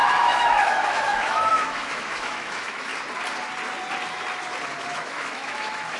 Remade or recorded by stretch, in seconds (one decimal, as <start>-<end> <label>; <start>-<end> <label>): 0.0-2.9 remade; 2.9-4.9 recorded; 4.9-6.0 remade